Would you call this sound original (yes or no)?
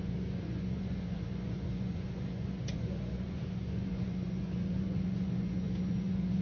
no